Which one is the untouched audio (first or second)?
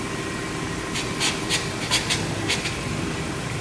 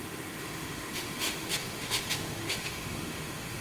first